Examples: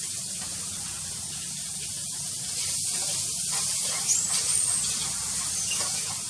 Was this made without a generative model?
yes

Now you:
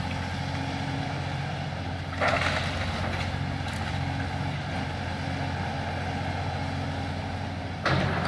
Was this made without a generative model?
yes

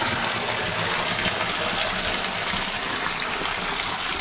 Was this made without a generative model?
yes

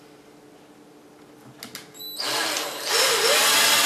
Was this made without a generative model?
yes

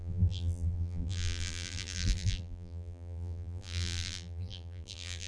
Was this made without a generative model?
no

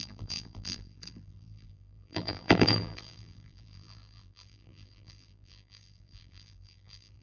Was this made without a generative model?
no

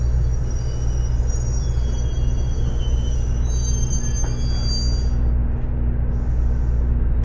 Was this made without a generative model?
yes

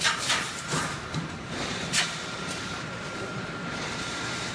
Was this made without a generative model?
no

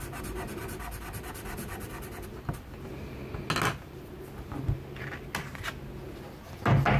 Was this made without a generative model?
yes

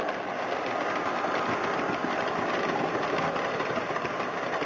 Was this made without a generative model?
no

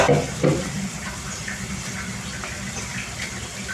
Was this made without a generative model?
yes